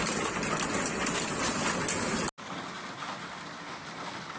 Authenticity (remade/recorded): recorded